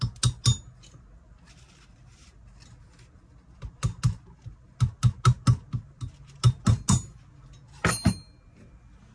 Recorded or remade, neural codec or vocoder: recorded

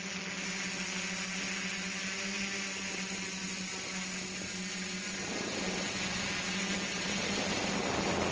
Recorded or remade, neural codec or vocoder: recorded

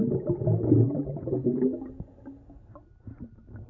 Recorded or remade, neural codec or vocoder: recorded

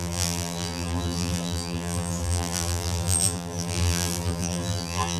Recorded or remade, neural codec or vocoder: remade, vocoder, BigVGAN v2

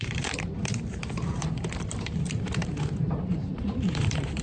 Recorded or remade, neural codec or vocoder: remade, vocoder, BigVGAN v2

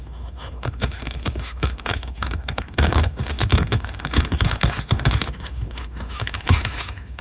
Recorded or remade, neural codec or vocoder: remade, autoencoder, DAC-VAE